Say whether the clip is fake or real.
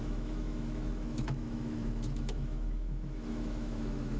fake